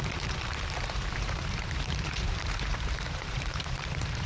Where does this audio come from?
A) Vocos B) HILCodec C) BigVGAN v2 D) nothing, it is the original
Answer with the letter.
C